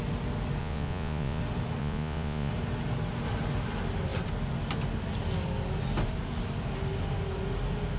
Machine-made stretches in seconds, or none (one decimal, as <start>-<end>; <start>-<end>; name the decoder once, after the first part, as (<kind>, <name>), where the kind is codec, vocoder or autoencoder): 0.6-1.4 (vocoder, Vocos); 1.8-2.5